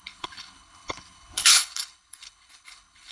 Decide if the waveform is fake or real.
fake